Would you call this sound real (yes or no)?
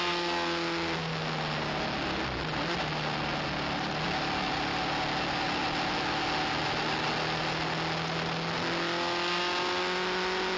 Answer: yes